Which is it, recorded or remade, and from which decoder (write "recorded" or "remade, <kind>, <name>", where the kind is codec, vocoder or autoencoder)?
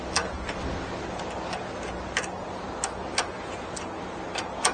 recorded